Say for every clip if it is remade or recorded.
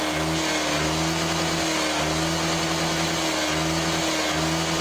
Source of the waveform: recorded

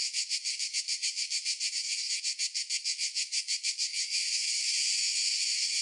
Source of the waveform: remade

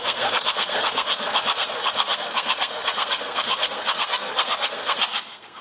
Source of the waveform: remade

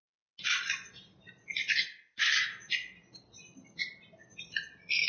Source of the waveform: recorded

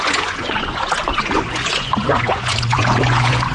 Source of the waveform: remade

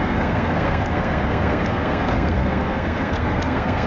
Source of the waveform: remade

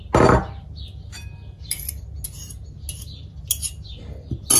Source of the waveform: recorded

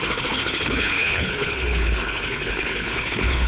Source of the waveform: remade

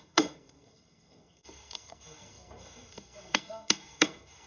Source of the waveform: remade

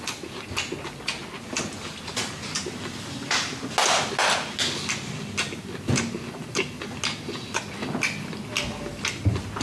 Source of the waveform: recorded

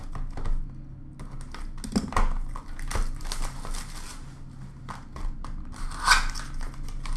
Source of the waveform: recorded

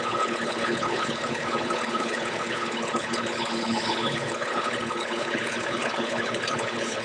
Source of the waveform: remade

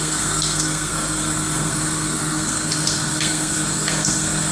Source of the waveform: remade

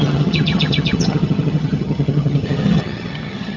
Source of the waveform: remade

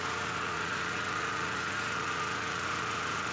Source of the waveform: remade